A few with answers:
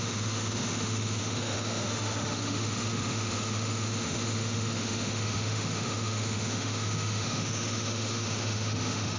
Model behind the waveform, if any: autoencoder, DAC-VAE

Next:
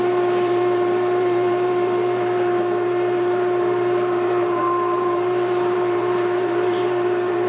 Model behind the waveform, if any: vocoder, BigVGAN v2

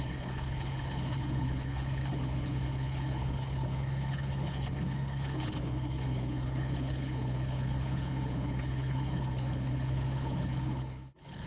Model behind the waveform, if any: codec, HILCodec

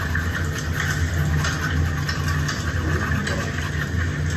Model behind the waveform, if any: none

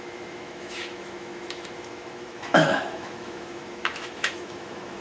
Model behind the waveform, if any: autoencoder, DAC-VAE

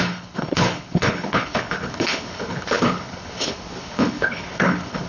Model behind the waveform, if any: codec, HILCodec